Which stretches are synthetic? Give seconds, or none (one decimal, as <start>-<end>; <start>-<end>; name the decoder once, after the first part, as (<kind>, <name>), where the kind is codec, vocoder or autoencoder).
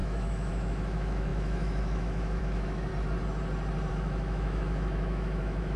0.0-2.9 (autoencoder, DAC-VAE); 3.9-5.8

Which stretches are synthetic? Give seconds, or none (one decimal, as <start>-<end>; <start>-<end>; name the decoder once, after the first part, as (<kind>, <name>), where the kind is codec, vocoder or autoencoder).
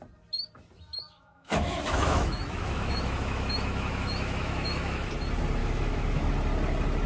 0.9-5.1 (autoencoder, DAC-VAE); 5.6-6.3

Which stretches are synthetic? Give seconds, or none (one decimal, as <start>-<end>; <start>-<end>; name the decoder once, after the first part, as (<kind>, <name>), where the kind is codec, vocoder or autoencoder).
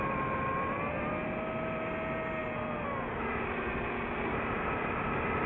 none